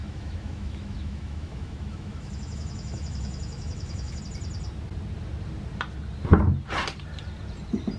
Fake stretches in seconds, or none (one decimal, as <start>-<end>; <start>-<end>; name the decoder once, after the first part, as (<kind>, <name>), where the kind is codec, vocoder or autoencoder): 0.0-4.2 (autoencoder, DAC-VAE)